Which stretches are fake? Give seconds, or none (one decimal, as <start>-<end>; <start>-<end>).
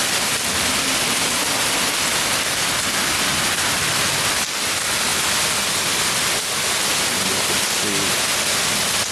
none